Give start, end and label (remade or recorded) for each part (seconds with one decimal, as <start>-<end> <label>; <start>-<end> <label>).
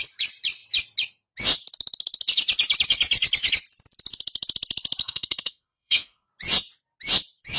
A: 0.0-5.0 recorded; 5.0-6.3 remade; 6.3-7.6 recorded